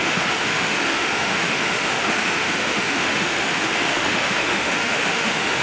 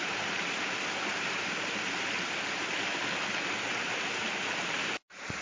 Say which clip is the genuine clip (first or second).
second